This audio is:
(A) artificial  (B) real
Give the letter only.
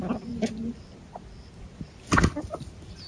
B